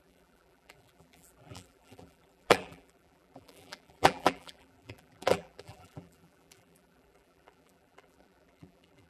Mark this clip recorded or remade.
remade